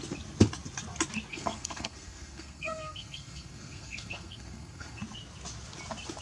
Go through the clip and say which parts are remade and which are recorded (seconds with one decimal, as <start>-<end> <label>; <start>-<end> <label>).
0.0-1.3 recorded; 1.3-5.0 remade; 5.0-6.2 recorded